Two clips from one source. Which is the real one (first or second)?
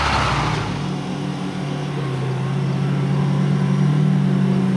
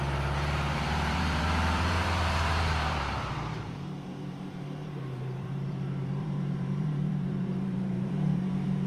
first